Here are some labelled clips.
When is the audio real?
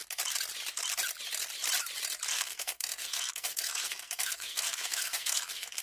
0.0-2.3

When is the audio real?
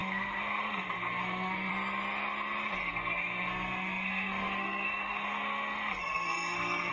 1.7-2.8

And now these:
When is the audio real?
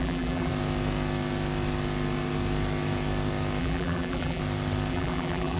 0.5-3.6; 4.4-4.9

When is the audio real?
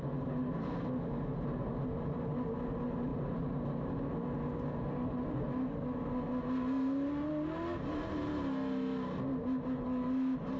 0.0-10.6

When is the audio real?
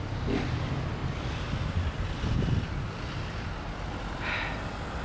0.0-5.0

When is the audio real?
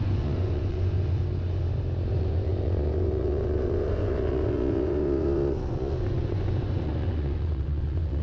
1.2-2.1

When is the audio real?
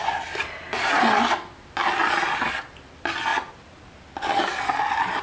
0.0-5.2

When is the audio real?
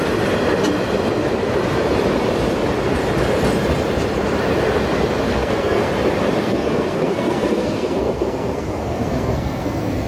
0.0-5.3; 5.9-6.4